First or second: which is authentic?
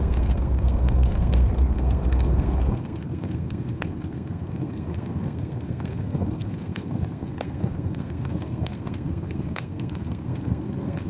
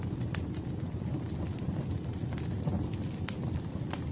second